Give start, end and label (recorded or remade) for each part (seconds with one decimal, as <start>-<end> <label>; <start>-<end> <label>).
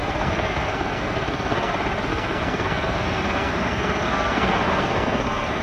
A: 0.0-1.7 remade; 1.7-2.1 recorded; 2.1-5.6 remade